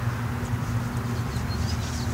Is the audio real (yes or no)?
yes